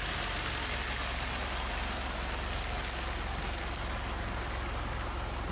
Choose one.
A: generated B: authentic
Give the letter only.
B